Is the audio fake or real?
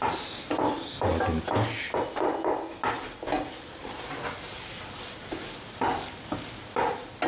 real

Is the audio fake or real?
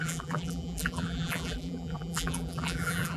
fake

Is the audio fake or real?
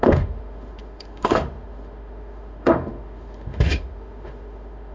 fake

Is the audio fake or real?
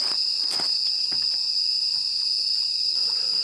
fake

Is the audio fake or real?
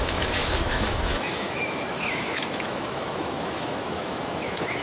fake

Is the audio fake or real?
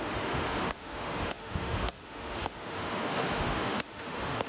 fake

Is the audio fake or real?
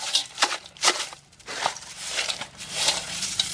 fake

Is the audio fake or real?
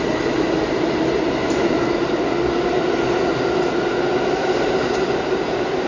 real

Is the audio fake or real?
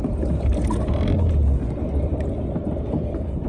real